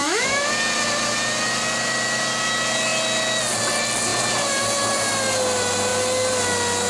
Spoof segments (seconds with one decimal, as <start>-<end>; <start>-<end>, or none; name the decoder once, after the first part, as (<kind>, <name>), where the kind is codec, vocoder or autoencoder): 0.0-0.5 (autoencoder, DAC-VAE)